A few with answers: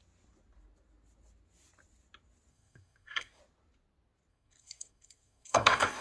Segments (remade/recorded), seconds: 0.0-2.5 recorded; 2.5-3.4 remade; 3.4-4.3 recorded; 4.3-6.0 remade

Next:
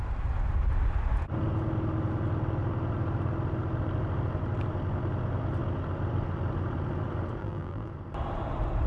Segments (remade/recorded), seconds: 0.0-7.4 recorded; 7.4-7.9 remade; 7.9-8.9 recorded

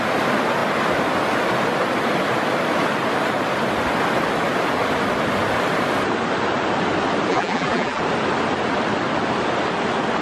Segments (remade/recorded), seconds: 0.0-7.3 recorded; 7.3-8.0 remade; 8.0-10.2 recorded

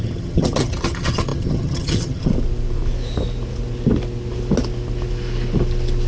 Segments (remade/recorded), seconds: 0.0-2.3 remade; 2.3-6.1 recorded

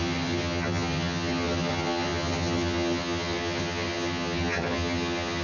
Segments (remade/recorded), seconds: 0.0-5.4 remade

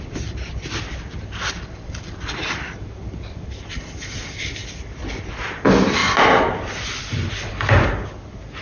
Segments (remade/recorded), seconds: 0.0-8.6 recorded

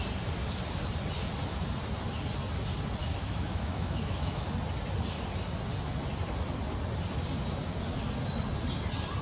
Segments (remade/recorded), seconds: 0.0-3.0 recorded; 3.0-4.5 remade; 4.5-9.2 recorded

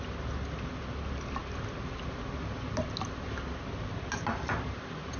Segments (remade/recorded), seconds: 0.0-5.2 recorded